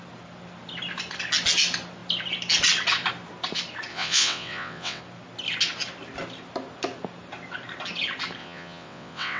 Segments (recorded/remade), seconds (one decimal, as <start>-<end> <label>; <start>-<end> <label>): 0.0-3.9 recorded; 3.9-5.0 remade; 5.0-8.4 recorded; 8.4-9.4 remade